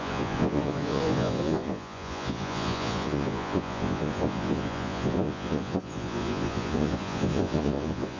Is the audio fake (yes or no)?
yes